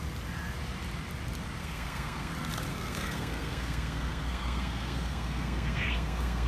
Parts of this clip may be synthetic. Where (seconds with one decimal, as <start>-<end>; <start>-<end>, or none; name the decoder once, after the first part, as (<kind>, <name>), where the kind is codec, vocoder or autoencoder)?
1.6-2.3 (codec, SNAC); 2.7-6.5